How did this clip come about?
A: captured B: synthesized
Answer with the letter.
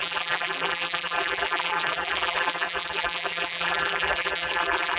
B